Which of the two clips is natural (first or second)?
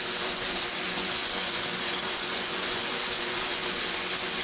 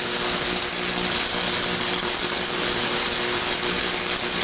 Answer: second